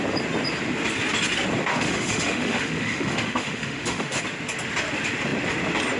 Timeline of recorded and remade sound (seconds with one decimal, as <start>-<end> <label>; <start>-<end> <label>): 0.0-1.7 recorded; 1.7-4.2 remade; 4.2-6.0 recorded